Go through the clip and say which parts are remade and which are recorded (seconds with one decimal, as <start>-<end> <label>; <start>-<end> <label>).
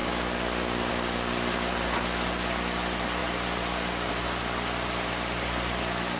0.0-6.2 recorded